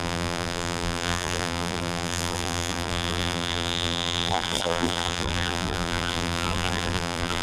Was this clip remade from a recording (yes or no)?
yes